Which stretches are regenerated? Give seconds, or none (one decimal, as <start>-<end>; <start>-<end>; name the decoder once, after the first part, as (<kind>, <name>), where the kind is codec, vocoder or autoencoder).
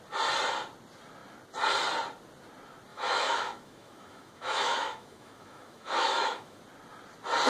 2.9-6.6 (autoencoder, DAC-VAE)